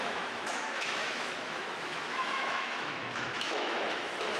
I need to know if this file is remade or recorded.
remade